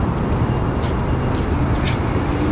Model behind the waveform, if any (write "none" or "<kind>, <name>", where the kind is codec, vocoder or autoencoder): none